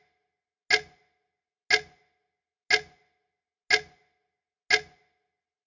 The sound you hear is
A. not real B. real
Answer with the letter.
B